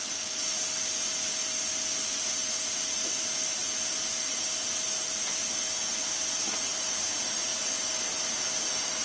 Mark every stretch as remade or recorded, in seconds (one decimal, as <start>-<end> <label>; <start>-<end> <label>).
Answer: 0.0-7.5 recorded; 7.5-8.0 remade; 8.0-9.0 recorded